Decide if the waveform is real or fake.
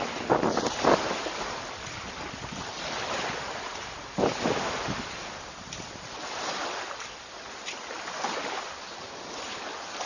real